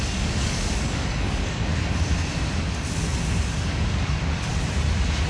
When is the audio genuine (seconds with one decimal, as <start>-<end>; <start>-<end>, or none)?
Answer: 1.7-3.4; 4.5-5.3